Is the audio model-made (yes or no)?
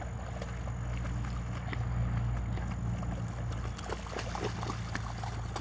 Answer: no